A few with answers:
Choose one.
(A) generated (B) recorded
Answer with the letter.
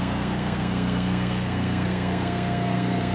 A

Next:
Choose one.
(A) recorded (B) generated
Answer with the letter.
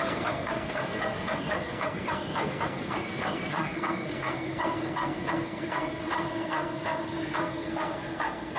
B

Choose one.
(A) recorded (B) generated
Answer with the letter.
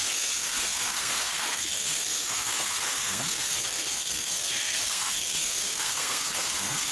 B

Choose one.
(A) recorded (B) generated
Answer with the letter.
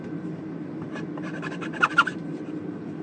A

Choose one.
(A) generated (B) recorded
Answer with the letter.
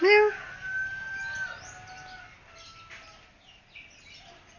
B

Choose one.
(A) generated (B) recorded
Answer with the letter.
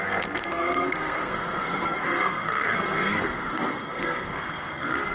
A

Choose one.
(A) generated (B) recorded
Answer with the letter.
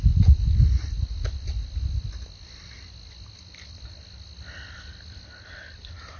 B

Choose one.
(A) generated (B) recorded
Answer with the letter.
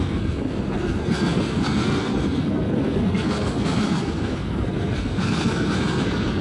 A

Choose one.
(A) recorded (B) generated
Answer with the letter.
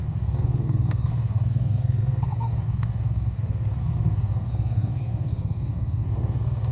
B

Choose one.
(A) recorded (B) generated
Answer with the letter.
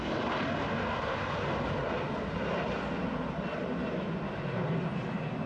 A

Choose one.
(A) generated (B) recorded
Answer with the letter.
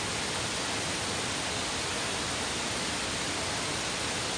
B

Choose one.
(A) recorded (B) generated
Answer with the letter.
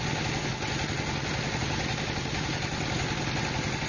A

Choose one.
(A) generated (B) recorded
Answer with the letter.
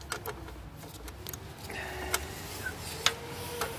B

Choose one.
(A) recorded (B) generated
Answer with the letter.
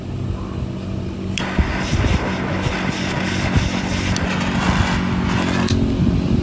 A